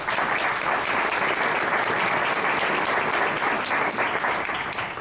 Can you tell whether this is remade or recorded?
recorded